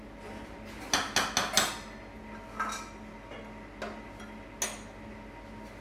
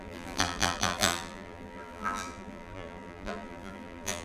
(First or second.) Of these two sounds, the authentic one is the first